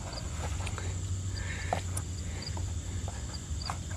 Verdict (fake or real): fake